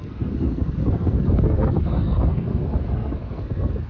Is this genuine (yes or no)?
no